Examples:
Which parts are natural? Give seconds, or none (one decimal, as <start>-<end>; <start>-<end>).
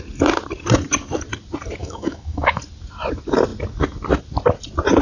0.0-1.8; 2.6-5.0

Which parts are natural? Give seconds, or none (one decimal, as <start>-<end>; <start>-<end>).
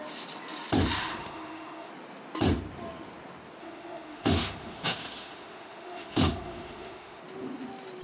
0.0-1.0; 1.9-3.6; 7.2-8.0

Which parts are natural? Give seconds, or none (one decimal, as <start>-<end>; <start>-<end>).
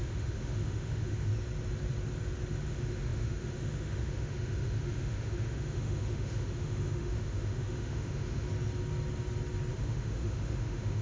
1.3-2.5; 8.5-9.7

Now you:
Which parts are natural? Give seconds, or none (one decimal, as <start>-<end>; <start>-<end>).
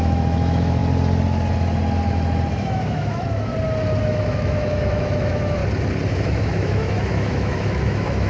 0.8-2.5; 3.5-4.0; 5.6-6.1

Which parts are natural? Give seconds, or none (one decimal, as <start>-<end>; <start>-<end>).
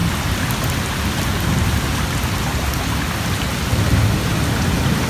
0.0-5.1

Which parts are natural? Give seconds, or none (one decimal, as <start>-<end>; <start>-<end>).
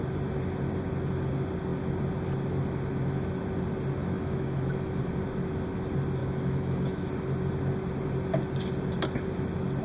0.0-4.0; 5.0-6.2; 7.1-9.8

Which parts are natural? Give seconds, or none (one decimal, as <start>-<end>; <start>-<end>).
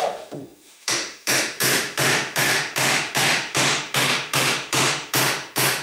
none